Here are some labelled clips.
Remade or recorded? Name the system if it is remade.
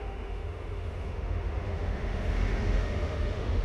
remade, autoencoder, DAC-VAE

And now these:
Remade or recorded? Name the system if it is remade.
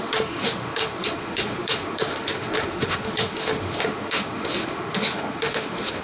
remade, autoencoder, DAC-VAE